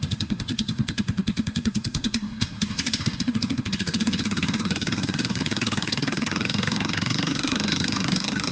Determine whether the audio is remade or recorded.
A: remade